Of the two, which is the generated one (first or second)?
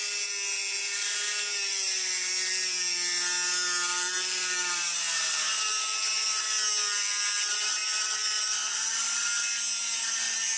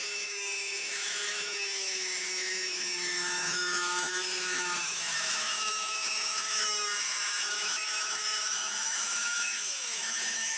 second